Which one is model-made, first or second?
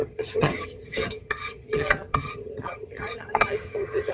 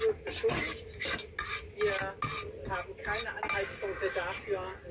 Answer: first